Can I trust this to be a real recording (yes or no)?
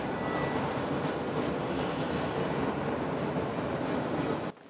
yes